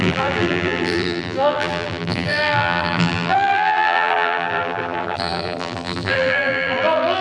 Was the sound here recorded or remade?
remade